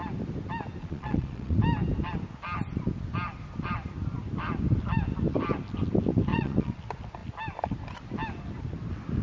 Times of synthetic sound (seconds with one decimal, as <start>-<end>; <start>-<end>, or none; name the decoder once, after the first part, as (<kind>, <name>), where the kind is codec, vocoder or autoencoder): 0.8-1.6 (vocoder, Vocos); 6.3-6.8